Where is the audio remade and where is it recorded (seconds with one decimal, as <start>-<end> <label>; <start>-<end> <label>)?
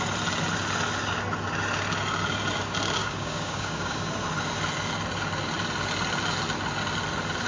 0.0-3.0 recorded; 3.0-4.1 remade; 4.1-7.5 recorded